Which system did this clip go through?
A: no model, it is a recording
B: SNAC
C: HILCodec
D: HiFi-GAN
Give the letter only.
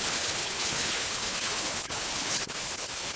C